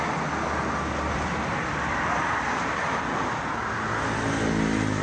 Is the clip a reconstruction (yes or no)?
no